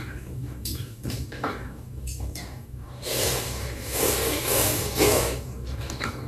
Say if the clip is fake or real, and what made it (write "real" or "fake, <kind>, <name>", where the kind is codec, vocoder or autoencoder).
fake, codec, DAC